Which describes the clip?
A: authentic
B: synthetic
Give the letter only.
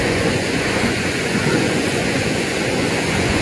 B